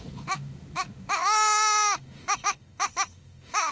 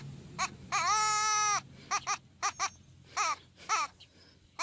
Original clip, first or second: second